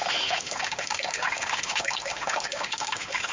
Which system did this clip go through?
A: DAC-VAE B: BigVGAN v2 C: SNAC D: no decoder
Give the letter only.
A